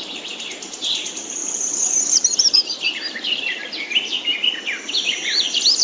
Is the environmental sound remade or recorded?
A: remade